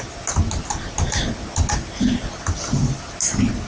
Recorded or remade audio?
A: recorded